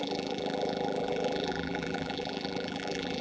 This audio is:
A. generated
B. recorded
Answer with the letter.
A